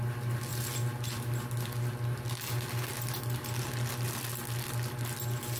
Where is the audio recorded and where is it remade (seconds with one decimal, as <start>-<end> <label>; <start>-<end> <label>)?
0.0-5.6 recorded